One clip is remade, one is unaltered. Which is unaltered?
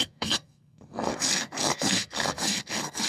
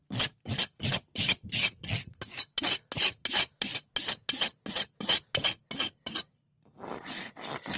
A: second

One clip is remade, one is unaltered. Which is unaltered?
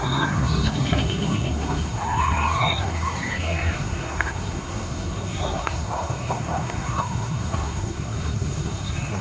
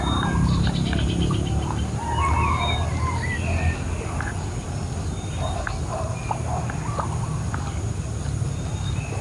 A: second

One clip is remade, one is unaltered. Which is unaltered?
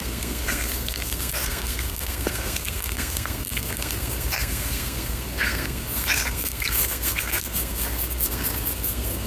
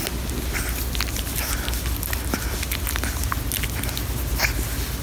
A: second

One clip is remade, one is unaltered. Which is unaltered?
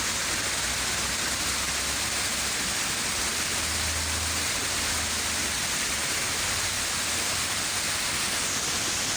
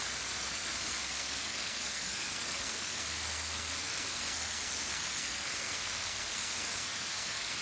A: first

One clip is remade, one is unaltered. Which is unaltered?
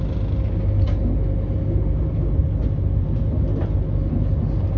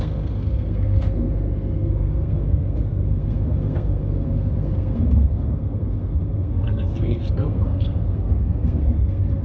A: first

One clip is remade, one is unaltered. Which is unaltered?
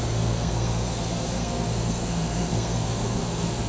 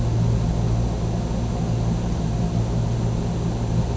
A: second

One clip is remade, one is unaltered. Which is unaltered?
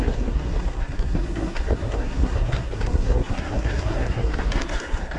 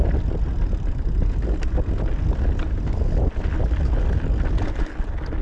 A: second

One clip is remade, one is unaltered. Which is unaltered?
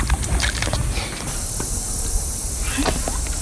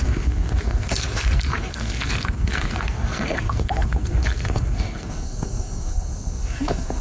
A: first